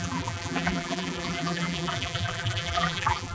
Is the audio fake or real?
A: fake